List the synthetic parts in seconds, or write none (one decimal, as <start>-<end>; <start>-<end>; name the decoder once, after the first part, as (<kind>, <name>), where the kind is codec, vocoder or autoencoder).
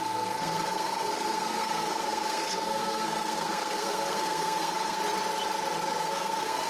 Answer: 0.0-5.0 (codec, SNAC); 6.0-6.7